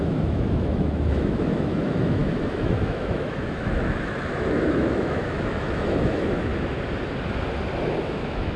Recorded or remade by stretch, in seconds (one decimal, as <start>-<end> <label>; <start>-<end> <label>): 0.0-6.5 remade; 6.5-8.0 recorded; 8.0-8.6 remade